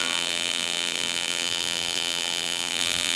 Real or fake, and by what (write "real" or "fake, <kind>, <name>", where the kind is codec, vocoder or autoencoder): fake, vocoder, BigVGAN v2